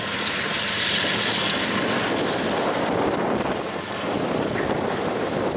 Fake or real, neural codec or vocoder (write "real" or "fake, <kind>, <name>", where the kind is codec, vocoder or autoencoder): real